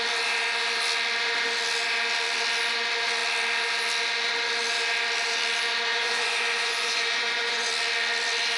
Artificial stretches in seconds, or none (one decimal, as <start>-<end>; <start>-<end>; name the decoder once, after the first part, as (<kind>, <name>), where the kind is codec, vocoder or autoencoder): 5.9-7.7 (vocoder, Vocos)